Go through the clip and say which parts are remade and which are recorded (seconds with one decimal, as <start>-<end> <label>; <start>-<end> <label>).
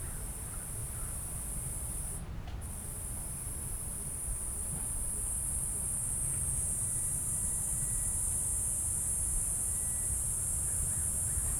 0.0-0.8 remade; 0.8-2.3 recorded; 2.3-6.0 remade; 6.0-6.9 recorded; 6.9-8.5 remade; 8.5-10.8 recorded; 10.8-11.6 remade